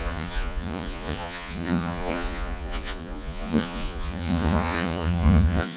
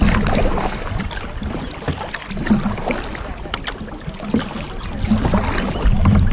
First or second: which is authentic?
second